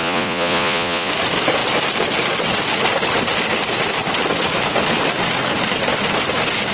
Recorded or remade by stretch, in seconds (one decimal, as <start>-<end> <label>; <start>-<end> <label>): 0.0-1.1 remade; 1.1-6.7 recorded